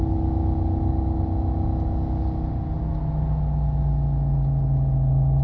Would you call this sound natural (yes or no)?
yes